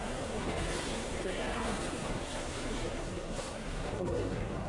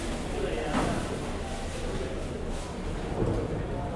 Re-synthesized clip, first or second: first